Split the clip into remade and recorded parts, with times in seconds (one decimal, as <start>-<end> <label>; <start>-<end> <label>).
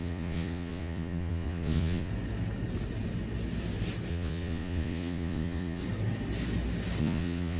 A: 0.0-2.1 remade; 2.1-4.1 recorded; 4.1-5.8 remade; 5.8-7.0 recorded; 7.0-7.6 remade